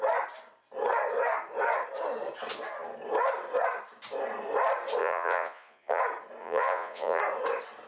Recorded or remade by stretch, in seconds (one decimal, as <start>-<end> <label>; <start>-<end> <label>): 0.0-5.0 recorded; 5.0-6.0 remade; 6.0-6.4 recorded; 6.4-7.2 remade; 7.2-7.9 recorded